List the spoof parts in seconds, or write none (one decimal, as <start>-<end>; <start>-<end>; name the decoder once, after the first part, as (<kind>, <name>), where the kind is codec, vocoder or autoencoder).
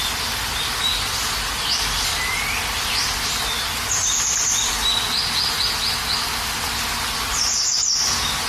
none